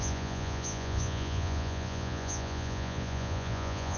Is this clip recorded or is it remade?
remade